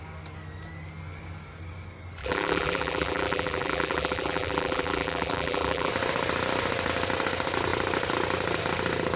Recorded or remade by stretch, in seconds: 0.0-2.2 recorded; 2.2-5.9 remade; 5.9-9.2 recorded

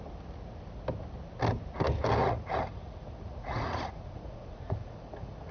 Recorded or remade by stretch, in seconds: 0.0-2.2 recorded; 2.2-5.5 remade

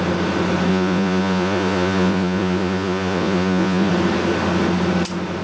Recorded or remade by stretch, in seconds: 0.0-0.7 recorded; 0.7-3.9 remade; 3.9-5.4 recorded